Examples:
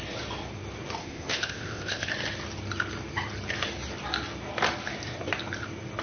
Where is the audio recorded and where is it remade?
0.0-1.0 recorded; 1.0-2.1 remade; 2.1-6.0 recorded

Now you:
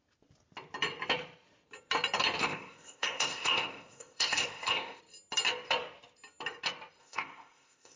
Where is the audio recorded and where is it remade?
0.0-2.4 recorded; 2.4-5.0 remade; 5.0-7.0 recorded; 7.0-8.0 remade

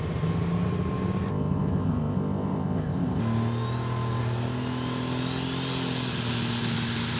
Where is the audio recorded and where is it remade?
0.0-1.3 recorded; 1.3-3.2 remade; 3.2-7.2 recorded

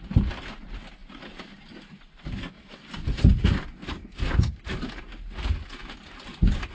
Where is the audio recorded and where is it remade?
0.0-6.7 recorded

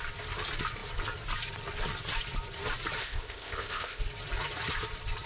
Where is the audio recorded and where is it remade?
0.0-3.0 recorded; 3.0-4.0 remade; 4.0-5.3 recorded

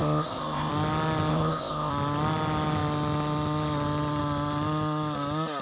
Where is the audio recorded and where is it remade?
0.0-0.7 remade; 0.7-1.3 recorded; 1.3-1.9 remade; 1.9-5.6 recorded

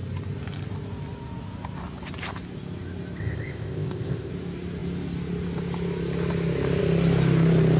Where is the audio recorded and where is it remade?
0.0-3.2 recorded; 3.2-4.3 remade; 4.3-7.8 recorded